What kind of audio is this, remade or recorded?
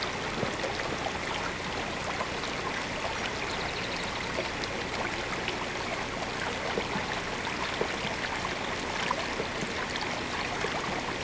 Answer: recorded